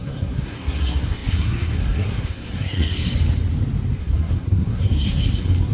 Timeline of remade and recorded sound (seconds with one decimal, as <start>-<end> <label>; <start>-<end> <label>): 0.0-3.1 remade; 3.1-4.0 recorded; 4.0-5.7 remade